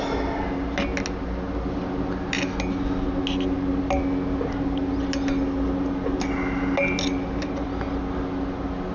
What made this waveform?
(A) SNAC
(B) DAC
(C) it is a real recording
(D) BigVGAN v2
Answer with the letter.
C